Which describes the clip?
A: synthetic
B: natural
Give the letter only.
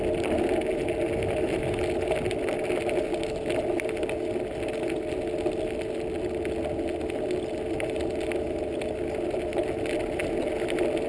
B